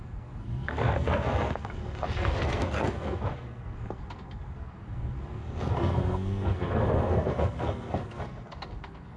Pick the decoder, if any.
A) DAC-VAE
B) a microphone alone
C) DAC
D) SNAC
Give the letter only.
D